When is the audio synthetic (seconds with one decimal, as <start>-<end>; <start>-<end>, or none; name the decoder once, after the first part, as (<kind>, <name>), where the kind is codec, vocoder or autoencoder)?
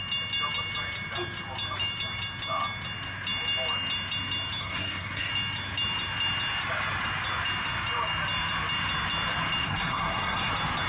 4.6-5.3 (codec, SNAC); 9.6-10.5